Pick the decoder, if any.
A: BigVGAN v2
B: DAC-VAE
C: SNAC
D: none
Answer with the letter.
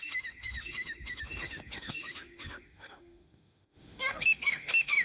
B